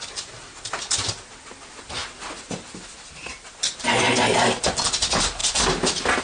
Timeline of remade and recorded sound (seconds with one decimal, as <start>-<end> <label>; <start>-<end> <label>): 0.0-6.2 recorded